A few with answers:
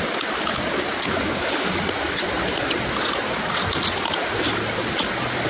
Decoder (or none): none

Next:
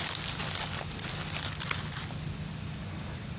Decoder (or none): none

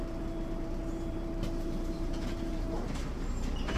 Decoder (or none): vocoder, BigVGAN v2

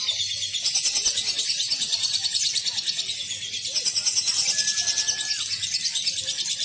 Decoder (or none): none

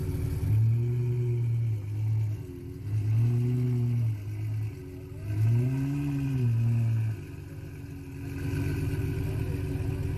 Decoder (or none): none